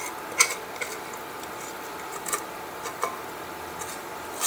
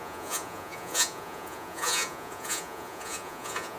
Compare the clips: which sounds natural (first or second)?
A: first